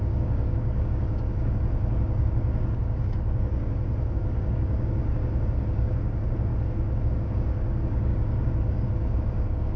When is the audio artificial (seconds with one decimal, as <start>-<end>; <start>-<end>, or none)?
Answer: 0.0-6.5; 7.1-9.8